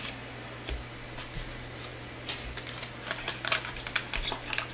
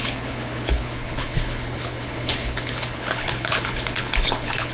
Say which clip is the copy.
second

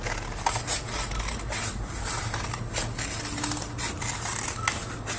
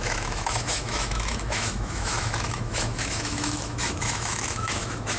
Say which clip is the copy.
second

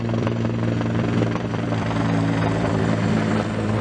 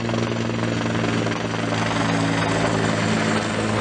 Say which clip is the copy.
first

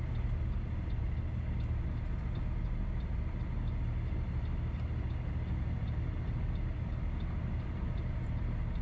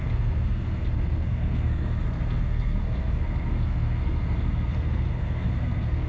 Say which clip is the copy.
second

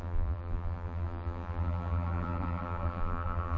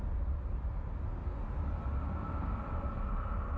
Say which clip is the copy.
first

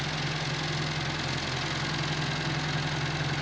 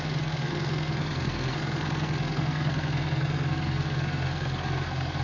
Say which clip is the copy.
second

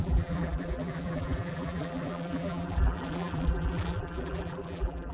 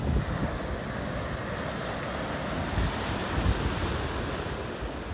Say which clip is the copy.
first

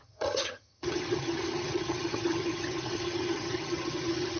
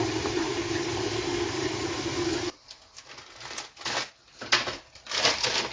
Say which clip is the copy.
first